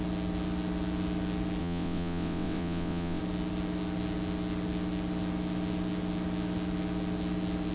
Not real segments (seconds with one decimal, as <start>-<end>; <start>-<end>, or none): 1.6-3.2